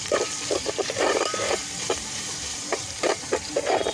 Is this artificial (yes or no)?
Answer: yes